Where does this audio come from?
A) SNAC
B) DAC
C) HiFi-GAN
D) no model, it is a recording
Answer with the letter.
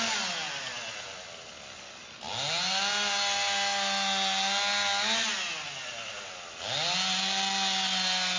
D